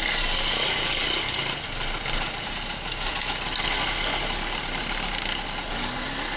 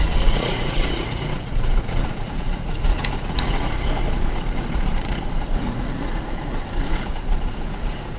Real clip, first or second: first